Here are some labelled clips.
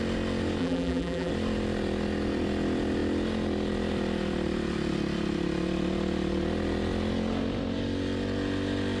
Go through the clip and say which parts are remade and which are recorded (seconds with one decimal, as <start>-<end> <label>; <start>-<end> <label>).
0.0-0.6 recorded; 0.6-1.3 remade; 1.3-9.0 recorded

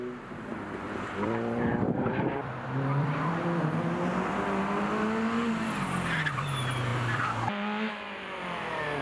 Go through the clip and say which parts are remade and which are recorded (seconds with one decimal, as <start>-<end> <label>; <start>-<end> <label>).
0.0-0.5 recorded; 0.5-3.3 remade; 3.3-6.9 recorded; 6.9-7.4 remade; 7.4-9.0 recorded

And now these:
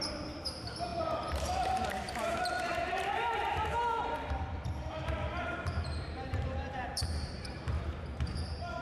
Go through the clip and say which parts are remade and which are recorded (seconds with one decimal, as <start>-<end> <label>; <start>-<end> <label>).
0.0-8.8 remade

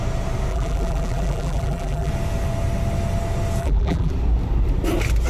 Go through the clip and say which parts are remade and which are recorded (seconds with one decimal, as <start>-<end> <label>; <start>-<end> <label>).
0.0-0.5 recorded; 0.5-2.1 remade; 2.1-3.6 recorded; 3.6-4.1 remade; 4.1-5.3 recorded

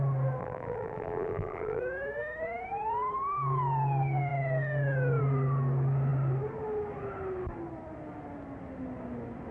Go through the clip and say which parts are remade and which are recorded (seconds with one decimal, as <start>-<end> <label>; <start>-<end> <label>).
0.0-0.4 recorded; 0.4-1.8 remade; 1.8-9.5 recorded